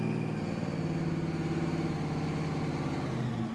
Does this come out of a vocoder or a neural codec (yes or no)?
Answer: no